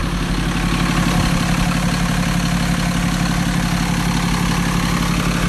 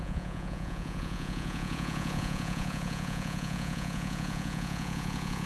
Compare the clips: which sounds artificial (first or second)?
second